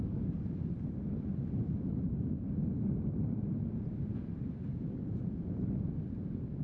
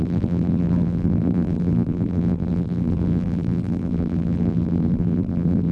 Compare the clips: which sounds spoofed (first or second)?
second